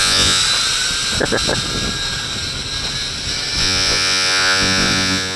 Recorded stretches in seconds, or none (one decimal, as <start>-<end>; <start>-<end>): 0.4-3.6